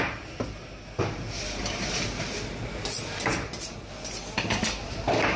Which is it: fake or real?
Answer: real